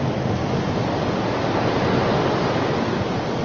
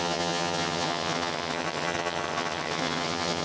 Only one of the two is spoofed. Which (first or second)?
second